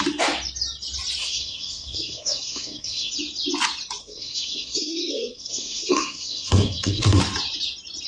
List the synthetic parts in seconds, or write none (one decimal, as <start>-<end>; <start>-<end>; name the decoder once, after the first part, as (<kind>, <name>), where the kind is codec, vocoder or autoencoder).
1.2-3.1 (codec, SNAC); 4.0-7.2